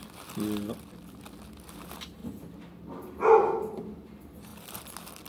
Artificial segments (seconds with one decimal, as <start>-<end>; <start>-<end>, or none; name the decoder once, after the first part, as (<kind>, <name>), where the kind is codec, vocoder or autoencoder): none